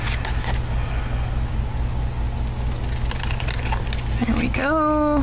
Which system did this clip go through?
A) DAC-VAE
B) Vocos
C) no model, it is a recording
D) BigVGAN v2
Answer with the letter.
C